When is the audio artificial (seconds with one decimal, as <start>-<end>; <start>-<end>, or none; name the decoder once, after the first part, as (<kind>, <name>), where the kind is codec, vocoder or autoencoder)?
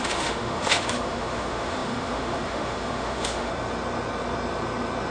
0.0-3.5 (autoencoder, DAC-VAE)